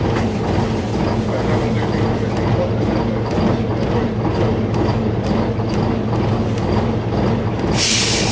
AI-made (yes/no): no